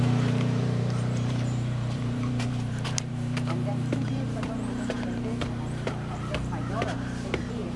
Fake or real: fake